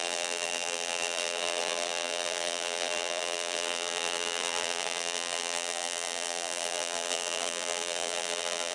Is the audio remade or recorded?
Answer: remade